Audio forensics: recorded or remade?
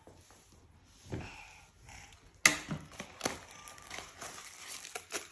recorded